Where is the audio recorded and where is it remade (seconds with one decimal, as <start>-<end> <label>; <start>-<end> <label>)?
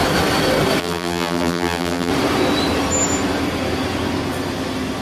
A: 0.0-0.8 recorded; 0.8-2.1 remade; 2.1-5.0 recorded